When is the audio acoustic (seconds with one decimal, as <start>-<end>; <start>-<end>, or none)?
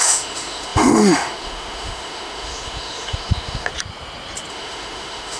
3.7-4.5